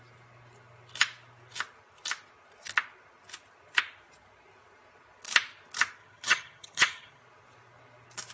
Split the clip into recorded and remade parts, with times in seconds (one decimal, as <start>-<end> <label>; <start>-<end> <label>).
0.0-6.0 recorded; 6.0-7.2 remade; 7.2-8.3 recorded